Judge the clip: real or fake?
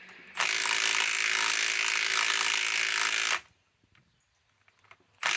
real